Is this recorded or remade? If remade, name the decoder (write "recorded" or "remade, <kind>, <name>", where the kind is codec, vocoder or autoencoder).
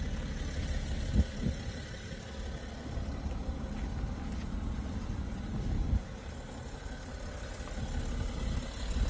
recorded